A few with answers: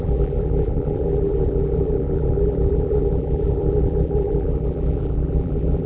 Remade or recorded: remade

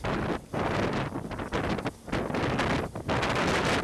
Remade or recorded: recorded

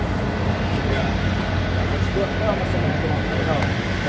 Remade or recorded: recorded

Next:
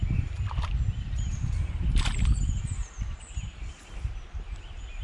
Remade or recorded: recorded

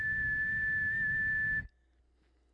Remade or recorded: recorded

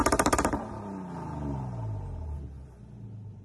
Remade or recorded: recorded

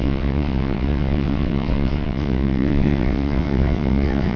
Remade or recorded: remade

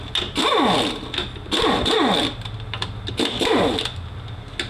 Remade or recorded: recorded